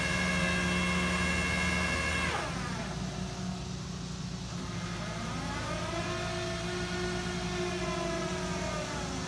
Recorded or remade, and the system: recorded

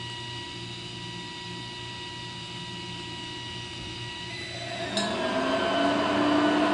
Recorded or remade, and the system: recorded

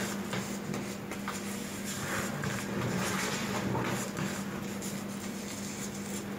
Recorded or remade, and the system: recorded